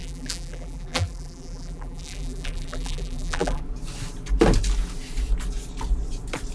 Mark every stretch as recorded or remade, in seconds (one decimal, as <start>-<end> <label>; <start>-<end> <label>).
0.0-3.6 remade; 3.6-6.5 recorded